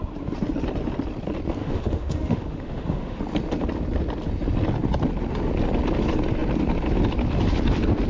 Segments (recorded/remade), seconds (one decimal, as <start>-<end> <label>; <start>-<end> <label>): 0.0-1.6 recorded; 1.6-3.2 remade; 3.2-8.1 recorded